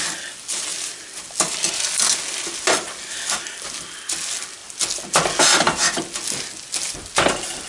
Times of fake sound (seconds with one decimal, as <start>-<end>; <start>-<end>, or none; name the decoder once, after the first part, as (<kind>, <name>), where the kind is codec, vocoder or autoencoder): none